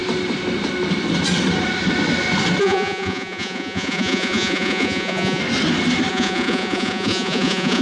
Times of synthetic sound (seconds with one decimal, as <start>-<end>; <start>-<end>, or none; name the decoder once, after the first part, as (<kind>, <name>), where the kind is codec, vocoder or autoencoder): 2.6-5.4 (vocoder, Vocos); 6.1-7.8